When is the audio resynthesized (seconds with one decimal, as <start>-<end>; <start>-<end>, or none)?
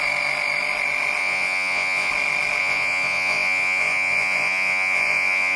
1.2-2.1; 2.6-5.6